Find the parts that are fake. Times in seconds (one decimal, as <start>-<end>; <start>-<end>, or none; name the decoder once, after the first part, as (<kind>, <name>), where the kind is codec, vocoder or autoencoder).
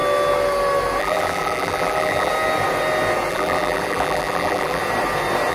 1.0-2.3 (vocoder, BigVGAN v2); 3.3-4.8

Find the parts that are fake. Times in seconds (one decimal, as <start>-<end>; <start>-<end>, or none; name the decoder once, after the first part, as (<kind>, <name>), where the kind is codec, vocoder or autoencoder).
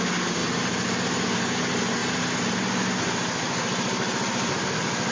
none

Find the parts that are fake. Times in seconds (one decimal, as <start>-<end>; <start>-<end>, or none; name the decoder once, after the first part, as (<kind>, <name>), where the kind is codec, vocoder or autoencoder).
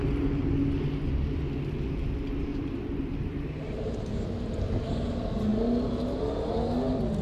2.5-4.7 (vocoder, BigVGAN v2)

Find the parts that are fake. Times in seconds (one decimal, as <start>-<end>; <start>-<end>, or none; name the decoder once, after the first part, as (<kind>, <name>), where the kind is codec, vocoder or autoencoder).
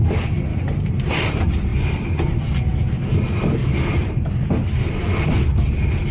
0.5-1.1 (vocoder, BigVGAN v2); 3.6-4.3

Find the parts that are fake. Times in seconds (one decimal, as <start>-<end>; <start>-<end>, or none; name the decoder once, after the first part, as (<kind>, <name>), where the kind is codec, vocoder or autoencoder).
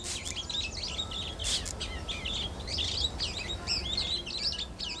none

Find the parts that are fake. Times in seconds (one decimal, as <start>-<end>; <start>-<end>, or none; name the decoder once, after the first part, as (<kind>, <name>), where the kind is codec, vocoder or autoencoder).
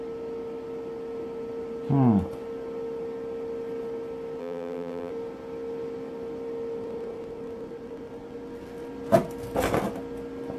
4.4-5.1 (vocoder, BigVGAN v2)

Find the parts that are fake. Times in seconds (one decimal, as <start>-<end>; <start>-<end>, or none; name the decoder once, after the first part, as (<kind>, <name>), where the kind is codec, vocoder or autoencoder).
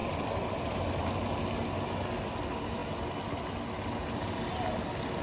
0.0-1.4 (vocoder, BigVGAN v2); 2.8-3.5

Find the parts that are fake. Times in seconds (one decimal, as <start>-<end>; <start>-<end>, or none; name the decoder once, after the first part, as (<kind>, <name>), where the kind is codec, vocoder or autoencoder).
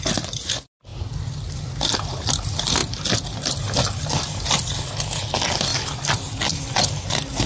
5.7-7.5 (vocoder, BigVGAN v2)